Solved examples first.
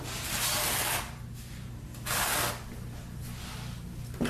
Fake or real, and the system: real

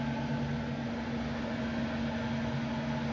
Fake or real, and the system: real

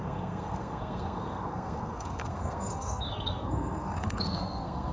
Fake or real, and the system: fake, codec, SNAC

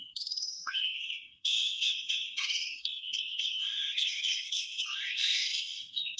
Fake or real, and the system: fake, codec, SNAC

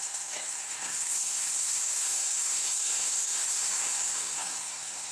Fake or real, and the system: fake, codec, SNAC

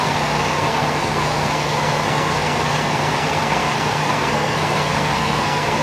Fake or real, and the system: fake, codec, SNAC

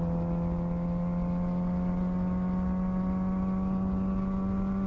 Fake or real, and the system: real